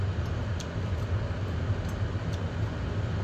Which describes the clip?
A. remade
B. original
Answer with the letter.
B